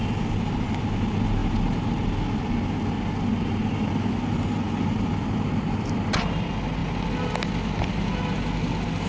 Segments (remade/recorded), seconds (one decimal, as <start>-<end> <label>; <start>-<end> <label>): 0.0-9.1 recorded